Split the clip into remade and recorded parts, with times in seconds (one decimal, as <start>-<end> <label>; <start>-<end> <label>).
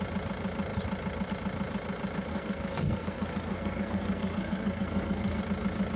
0.0-2.3 recorded; 2.3-5.4 remade; 5.4-6.0 recorded